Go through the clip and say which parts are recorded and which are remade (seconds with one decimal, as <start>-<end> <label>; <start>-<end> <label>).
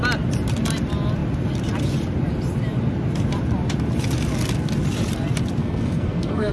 0.0-5.6 recorded; 5.6-6.5 remade